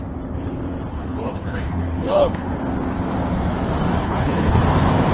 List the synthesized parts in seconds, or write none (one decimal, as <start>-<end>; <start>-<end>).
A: 0.9-2.5; 4.0-4.6